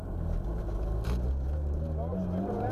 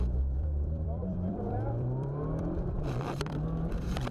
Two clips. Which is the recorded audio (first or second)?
first